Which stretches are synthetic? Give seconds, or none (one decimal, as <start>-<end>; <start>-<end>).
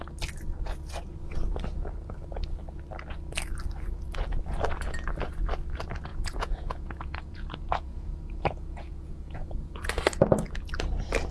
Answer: 6.1-9.8